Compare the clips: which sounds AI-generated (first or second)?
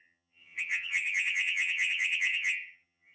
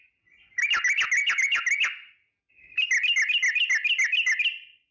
first